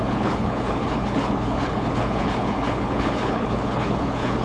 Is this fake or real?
fake